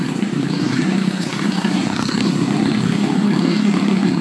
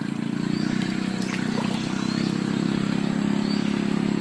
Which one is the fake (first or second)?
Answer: first